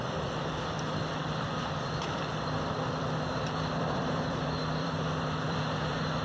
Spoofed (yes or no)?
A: yes